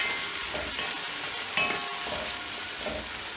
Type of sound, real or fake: real